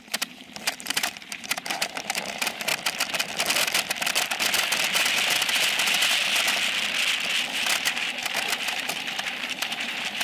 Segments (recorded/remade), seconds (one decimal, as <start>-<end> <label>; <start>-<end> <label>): 0.0-2.7 remade; 2.7-7.4 recorded; 7.4-10.2 remade